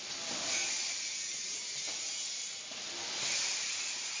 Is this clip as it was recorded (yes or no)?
yes